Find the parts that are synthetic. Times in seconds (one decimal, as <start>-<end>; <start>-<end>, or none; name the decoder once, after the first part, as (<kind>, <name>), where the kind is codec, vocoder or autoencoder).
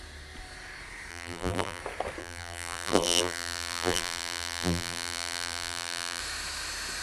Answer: 1.1-1.8 (vocoder, BigVGAN v2); 2.2-6.2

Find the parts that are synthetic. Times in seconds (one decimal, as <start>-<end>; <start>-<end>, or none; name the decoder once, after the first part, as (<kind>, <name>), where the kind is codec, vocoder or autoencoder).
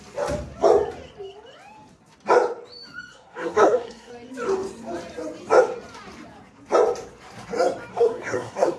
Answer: 3.1-4.1 (codec, SNAC); 7.9-8.8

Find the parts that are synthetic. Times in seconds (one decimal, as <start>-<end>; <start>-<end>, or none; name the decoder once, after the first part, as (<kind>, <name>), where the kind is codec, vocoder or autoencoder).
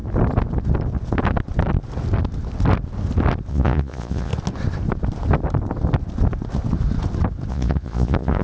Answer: 3.5-4.3 (vocoder, Vocos); 7.5-8.4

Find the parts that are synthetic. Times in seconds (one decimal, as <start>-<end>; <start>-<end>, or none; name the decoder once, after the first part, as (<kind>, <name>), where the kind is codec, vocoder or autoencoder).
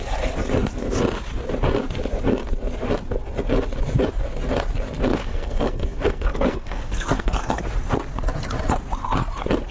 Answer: 5.1-7.6 (codec, SNAC)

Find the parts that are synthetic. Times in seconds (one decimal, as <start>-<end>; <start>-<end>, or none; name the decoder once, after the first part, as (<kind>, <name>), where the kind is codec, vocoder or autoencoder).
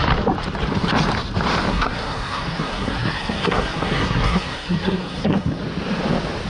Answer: 1.7-5.6 (codec, SNAC)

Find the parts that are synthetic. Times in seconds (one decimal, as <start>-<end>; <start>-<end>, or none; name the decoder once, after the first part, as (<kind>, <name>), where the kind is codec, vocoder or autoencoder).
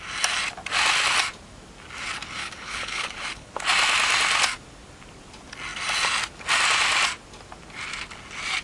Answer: 2.4-3.5 (codec, HILCodec)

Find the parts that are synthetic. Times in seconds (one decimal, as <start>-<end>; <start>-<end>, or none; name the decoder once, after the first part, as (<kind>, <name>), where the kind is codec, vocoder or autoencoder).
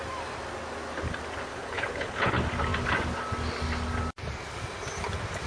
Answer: 1.5-2.3 (codec, HILCodec)